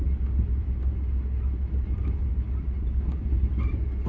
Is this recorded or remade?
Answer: recorded